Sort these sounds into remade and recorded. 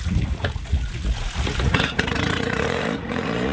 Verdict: remade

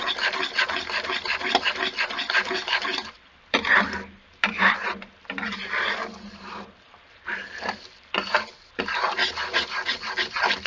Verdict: remade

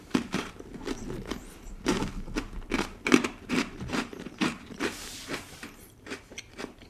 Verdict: remade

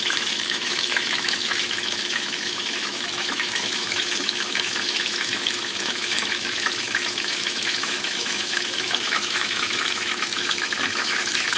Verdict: remade